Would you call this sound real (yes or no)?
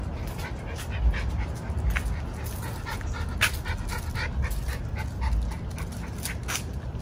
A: yes